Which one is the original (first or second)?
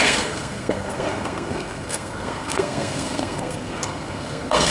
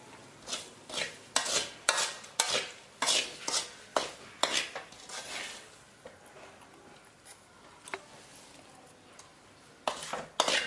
second